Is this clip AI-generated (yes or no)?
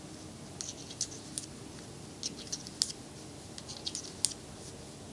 no